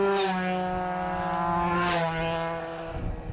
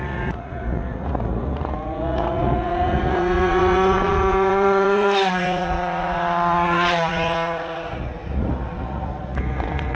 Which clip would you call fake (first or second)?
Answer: second